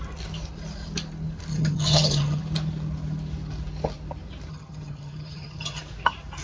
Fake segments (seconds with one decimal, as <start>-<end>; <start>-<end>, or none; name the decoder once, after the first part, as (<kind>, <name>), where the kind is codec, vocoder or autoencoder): 1.5-2.4 (vocoder, HiFi-GAN); 4.5-5.8